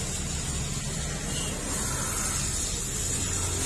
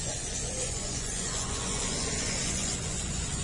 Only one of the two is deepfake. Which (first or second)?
second